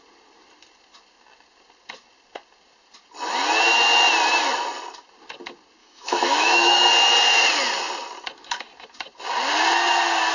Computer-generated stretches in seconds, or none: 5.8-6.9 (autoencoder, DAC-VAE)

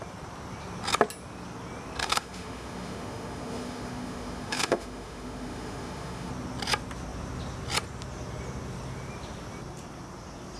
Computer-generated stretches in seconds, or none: 2.0-6.3 (autoencoder, DAC-VAE)

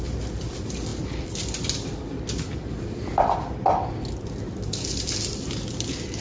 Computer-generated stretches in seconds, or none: none

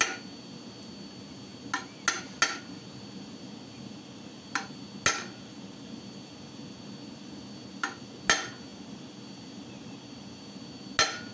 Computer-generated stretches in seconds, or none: none

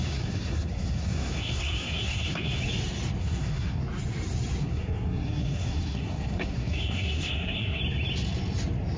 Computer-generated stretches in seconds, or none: 0.0-2.6 (codec, SNAC); 3.2-3.8; 4.6-7.8

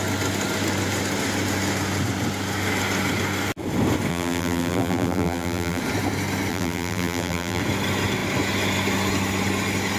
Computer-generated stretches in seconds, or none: 4.1-5.8 (vocoder, BigVGAN v2); 6.5-7.6

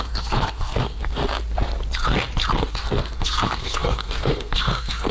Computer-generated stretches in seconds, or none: 0.0-1.2 (codec, SNAC); 2.7-5.1

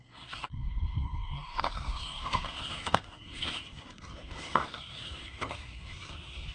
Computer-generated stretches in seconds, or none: 0.0-6.5 (codec, SNAC)